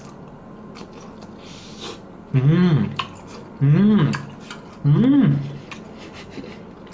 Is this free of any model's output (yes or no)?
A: yes